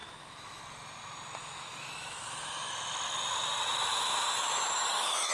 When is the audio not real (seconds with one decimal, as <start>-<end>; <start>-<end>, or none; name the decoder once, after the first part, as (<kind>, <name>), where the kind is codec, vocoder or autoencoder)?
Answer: 0.0-0.6 (autoencoder, DAC-VAE); 1.4-2.7; 3.9-5.3